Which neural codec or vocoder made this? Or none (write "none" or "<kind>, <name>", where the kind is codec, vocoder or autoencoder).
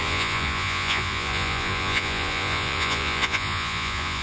vocoder, Vocos